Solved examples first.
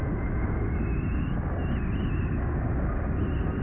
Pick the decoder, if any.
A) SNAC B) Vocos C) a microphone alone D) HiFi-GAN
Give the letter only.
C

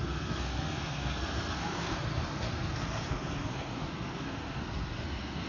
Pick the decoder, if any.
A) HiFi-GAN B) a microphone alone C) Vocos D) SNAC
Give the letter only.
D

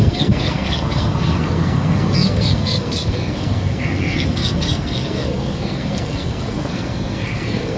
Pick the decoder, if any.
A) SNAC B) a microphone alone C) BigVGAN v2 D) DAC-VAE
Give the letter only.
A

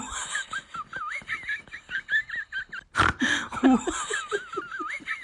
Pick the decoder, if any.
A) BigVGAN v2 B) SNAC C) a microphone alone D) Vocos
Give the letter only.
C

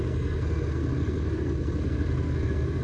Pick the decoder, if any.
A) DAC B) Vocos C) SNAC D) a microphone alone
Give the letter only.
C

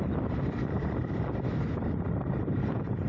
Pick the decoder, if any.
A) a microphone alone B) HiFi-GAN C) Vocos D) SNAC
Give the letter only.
A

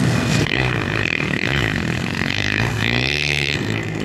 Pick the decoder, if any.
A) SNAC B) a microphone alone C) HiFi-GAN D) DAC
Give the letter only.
A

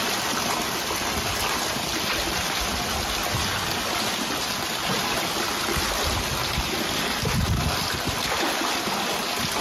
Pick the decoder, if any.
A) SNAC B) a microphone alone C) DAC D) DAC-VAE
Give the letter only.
B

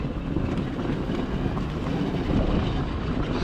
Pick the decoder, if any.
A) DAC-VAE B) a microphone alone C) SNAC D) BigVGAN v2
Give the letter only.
B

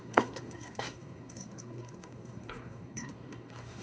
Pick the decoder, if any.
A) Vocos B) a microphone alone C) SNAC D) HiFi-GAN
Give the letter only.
C